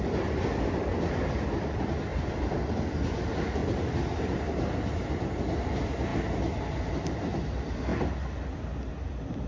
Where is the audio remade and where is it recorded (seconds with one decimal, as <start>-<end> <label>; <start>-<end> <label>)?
0.0-3.6 remade; 3.6-5.6 recorded; 5.6-6.1 remade; 6.1-6.9 recorded; 6.9-7.9 remade; 7.9-8.9 recorded; 8.9-9.5 remade